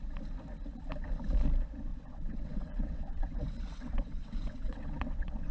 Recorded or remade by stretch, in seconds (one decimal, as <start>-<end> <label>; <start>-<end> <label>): 0.0-1.9 recorded; 1.9-5.5 remade